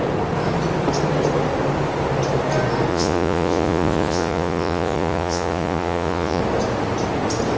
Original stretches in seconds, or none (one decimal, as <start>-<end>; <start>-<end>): 0.0-2.9; 6.4-7.6